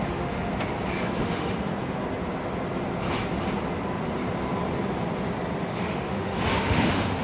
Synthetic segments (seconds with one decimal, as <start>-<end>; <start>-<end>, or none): 0.0-0.5; 1.2-1.7; 5.7-7.2